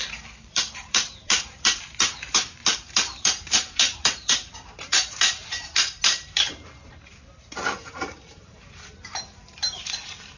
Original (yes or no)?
no